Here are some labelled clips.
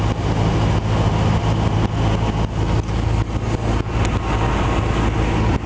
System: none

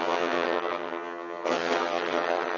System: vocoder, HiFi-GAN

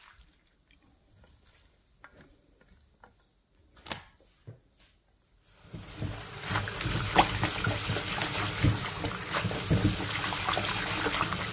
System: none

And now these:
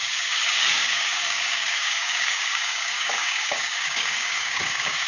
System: codec, DAC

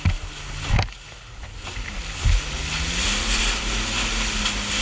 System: none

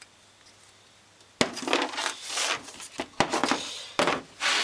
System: none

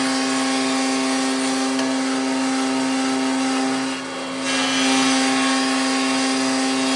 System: none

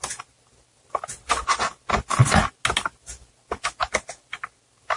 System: none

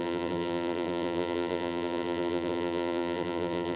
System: vocoder, BigVGAN v2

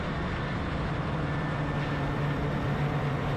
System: none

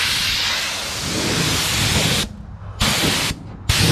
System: none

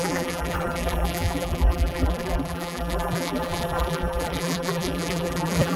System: vocoder, BigVGAN v2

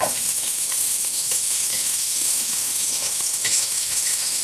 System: autoencoder, DAC-VAE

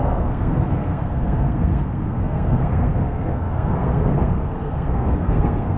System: codec, SNAC